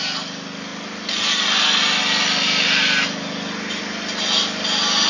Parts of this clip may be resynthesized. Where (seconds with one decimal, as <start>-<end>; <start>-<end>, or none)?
none